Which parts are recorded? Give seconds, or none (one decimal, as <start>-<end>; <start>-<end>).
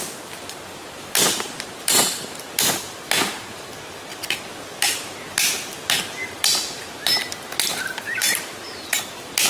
0.0-7.7; 8.4-9.5